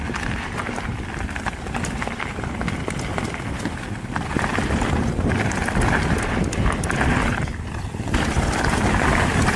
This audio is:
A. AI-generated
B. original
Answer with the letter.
B